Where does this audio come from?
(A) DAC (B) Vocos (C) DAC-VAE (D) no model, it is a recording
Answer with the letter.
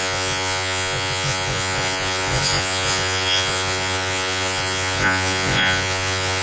B